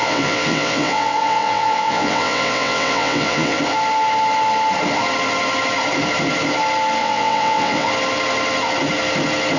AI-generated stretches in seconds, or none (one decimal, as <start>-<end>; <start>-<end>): 0.0-3.6; 7.0-7.9